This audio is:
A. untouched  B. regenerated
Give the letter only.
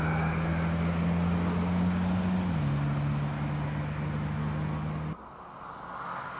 A